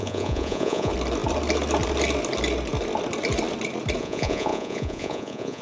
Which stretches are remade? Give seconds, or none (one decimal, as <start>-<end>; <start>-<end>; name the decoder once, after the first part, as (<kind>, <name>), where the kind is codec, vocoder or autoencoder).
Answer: 0.0-0.9 (vocoder, Vocos); 4.0-5.6